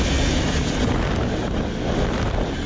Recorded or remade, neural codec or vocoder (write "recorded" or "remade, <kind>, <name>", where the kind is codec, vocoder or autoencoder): remade, vocoder, BigVGAN v2